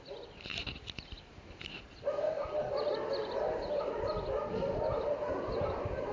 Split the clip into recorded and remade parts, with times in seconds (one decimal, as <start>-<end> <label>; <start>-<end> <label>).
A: 0.0-3.2 recorded; 3.2-4.6 remade; 4.6-6.1 recorded